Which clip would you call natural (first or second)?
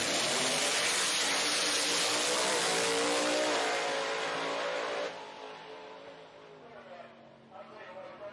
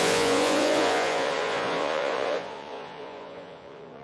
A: first